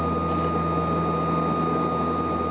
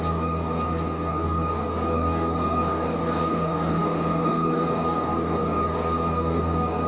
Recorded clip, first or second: first